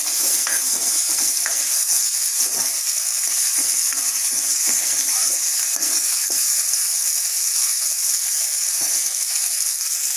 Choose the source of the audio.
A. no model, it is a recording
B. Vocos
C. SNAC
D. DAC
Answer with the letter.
C